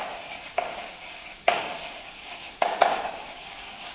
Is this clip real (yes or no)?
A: no